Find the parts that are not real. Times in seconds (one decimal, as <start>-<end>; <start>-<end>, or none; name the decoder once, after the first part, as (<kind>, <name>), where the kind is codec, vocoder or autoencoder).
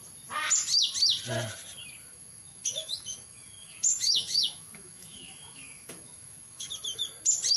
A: 2.1-6.7 (autoencoder, DAC-VAE)